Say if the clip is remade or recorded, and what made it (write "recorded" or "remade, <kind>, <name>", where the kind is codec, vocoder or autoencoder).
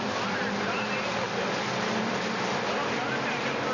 remade, vocoder, BigVGAN v2